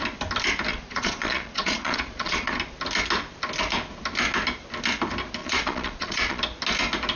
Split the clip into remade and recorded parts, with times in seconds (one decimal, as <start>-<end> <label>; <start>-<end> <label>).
0.0-0.7 recorded; 0.7-2.5 remade; 2.5-5.4 recorded; 5.4-6.4 remade; 6.4-7.2 recorded